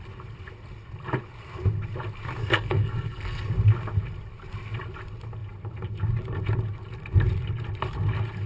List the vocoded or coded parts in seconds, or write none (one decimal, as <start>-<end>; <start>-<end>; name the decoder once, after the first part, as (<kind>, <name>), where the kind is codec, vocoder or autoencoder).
2.4-3.5 (codec, SNAC)